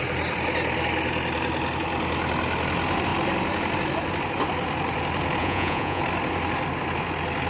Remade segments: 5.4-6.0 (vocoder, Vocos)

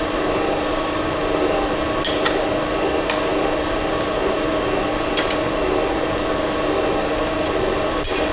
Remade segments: 3.3-3.9 (vocoder, BigVGAN v2)

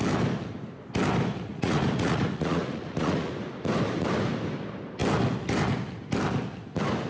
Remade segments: 1.5-3.3 (vocoder, Vocos)

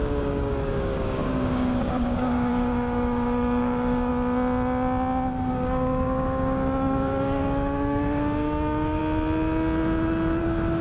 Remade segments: 0.0-4.1 (codec, DAC); 5.5-9.0; 10.4-10.8

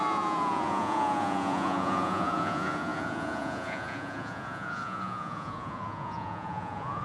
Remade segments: 0.0-7.0 (vocoder, Vocos)

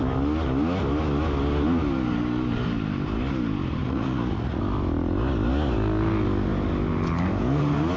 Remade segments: 3.8-4.6 (vocoder, Vocos)

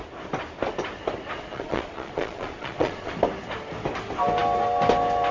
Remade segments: 1.5-3.1 (vocoder, Vocos)